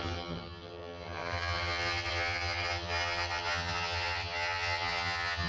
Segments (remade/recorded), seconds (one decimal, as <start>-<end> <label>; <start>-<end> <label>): 0.0-5.5 remade